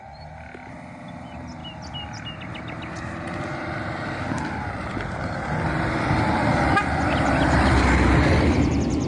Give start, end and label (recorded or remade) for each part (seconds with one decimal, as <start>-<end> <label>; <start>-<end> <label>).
0.0-9.1 recorded